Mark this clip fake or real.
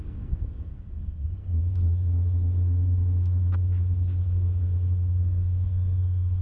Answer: fake